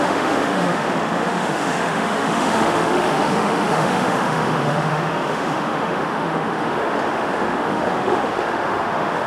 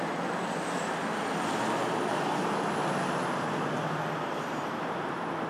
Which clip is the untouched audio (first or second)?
second